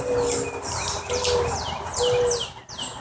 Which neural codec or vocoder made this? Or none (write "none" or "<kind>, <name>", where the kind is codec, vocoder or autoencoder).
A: none